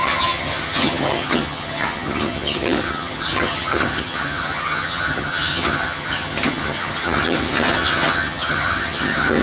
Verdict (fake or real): fake